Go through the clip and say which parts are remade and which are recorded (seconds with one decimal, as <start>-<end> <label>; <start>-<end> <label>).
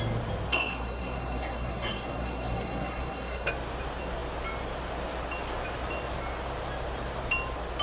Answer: 0.0-0.5 recorded; 0.5-3.5 remade; 3.5-7.8 recorded